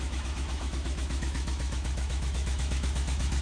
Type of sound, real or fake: fake